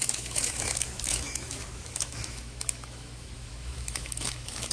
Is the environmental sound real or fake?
fake